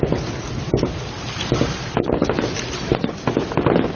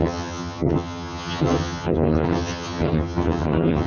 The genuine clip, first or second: first